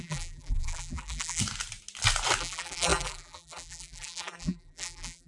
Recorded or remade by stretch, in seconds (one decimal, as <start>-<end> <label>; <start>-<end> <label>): 0.0-1.4 remade; 1.4-2.4 recorded; 2.4-5.3 remade